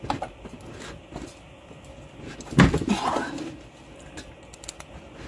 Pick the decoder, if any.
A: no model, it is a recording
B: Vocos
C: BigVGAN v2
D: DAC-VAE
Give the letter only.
A